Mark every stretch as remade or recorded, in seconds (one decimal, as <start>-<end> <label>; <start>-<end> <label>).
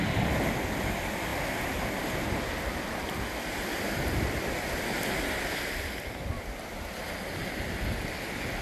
0.0-8.6 recorded